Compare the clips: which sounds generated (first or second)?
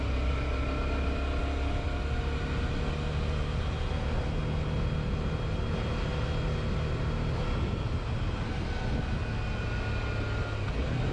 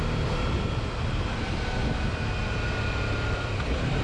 second